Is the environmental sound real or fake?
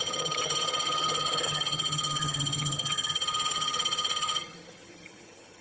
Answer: fake